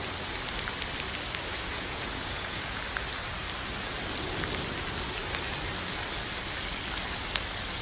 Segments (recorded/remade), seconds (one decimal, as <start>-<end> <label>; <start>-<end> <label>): 0.0-1.5 recorded; 1.5-2.8 remade; 2.8-7.8 recorded

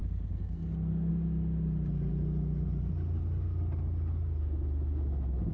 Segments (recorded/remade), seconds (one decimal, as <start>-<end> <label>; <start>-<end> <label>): 0.0-1.1 remade; 1.1-5.5 recorded

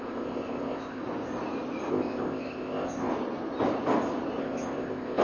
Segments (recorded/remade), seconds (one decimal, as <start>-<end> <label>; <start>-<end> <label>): 0.0-1.0 remade; 1.0-1.9 recorded; 1.9-3.1 remade; 3.1-4.4 recorded; 4.4-5.2 remade

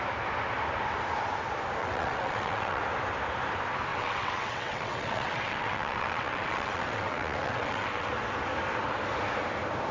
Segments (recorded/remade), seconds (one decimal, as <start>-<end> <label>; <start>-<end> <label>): 0.0-1.8 recorded; 1.8-2.8 remade; 2.8-3.9 recorded; 3.9-8.1 remade; 8.1-9.9 recorded